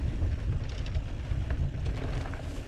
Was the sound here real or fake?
real